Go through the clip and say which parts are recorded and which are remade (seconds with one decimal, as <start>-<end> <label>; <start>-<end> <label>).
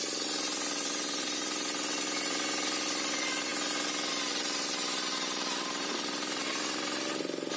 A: 0.0-3.5 remade; 3.5-4.1 recorded; 4.1-7.6 remade